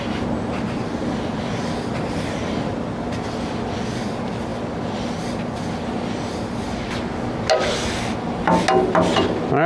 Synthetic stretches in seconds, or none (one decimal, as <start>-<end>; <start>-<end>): none